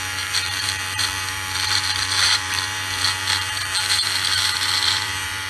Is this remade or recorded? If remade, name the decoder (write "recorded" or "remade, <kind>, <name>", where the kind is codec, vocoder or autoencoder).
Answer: remade, vocoder, BigVGAN v2